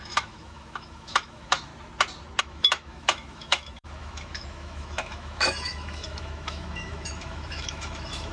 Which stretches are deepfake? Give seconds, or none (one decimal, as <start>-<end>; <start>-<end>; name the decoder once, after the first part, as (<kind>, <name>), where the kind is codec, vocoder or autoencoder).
0.0-1.7 (autoencoder, DAC-VAE); 2.4-8.3